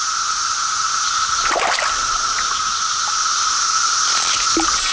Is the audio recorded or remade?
recorded